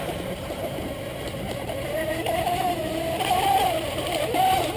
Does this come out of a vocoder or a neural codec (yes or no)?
yes